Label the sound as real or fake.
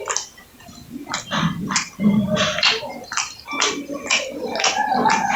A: real